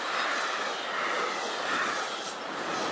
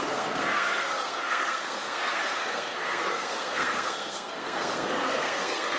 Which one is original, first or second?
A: first